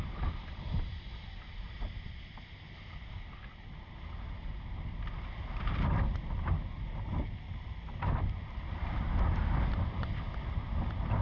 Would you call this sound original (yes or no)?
yes